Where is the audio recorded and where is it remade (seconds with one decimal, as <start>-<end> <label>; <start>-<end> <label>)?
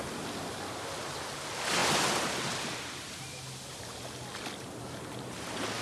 0.0-5.8 recorded